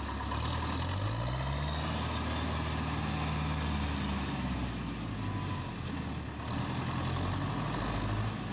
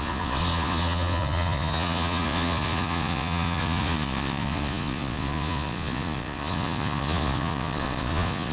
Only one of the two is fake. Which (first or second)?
second